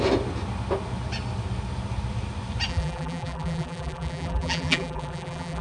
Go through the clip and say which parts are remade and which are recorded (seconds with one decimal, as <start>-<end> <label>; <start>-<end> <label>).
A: 0.0-2.7 recorded; 2.7-5.6 remade